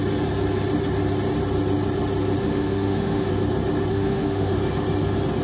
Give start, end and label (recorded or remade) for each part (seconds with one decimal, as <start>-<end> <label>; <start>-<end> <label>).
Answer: 0.0-2.4 recorded; 2.4-3.3 remade; 3.3-3.9 recorded; 3.9-4.5 remade; 4.5-5.4 recorded